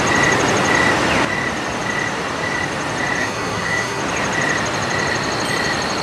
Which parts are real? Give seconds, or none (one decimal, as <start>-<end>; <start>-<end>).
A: 0.0-3.2; 4.0-6.0